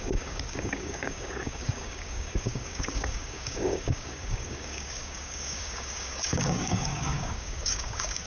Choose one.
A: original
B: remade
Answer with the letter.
B